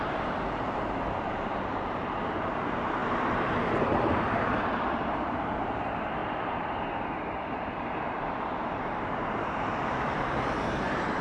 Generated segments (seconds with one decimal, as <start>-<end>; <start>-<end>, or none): 0.0-11.2